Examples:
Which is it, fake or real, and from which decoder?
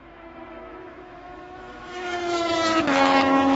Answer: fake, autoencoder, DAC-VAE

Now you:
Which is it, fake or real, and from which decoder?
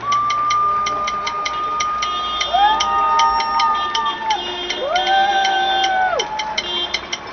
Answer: real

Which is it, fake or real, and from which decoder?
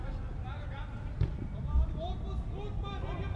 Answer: real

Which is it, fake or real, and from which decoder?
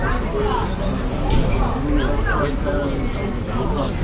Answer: real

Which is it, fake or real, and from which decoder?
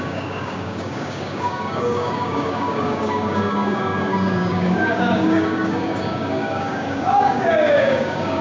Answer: fake, codec, DAC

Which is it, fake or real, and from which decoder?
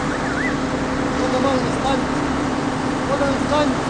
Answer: real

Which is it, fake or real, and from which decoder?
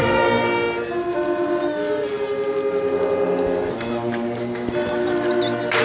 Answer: real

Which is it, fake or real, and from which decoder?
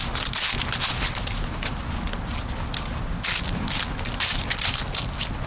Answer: real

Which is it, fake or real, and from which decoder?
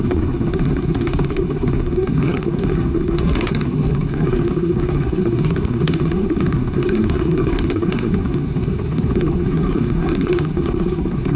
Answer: fake, codec, SNAC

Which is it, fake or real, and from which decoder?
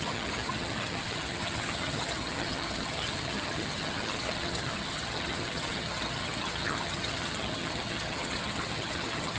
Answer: fake, vocoder, HiFi-GAN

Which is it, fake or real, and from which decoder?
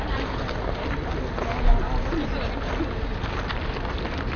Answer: real